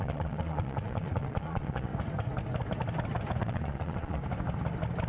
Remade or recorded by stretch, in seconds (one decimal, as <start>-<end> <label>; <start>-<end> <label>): 0.0-1.9 remade; 1.9-3.4 recorded; 3.4-4.2 remade; 4.2-5.1 recorded

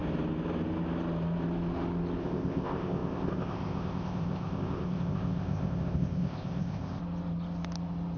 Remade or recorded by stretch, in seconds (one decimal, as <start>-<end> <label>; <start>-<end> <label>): 0.0-2.2 recorded; 2.2-7.0 remade; 7.0-8.2 recorded

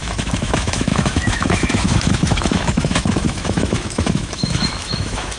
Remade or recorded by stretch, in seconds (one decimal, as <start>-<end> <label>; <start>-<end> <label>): 0.0-5.4 remade

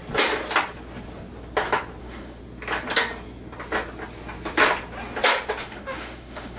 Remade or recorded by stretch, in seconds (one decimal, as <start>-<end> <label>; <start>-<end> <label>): 0.0-2.0 recorded; 2.0-2.4 remade; 2.4-5.6 recorded; 5.6-6.6 remade

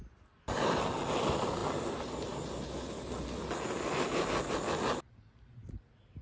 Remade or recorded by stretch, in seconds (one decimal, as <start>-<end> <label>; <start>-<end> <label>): 0.0-6.2 recorded

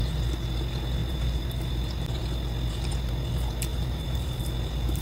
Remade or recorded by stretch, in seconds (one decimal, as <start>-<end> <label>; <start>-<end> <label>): 0.0-1.0 recorded; 1.0-1.7 remade; 1.7-3.7 recorded; 3.7-4.4 remade; 4.4-5.0 recorded

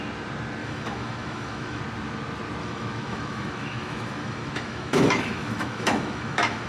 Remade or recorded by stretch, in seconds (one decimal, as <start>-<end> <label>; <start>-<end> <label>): 0.0-0.6 recorded; 0.6-1.8 remade; 1.8-2.6 recorded; 2.6-6.7 remade